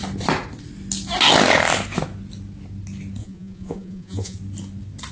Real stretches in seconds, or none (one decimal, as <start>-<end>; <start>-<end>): 0.0-3.2; 4.4-5.1